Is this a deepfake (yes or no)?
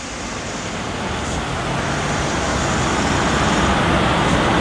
no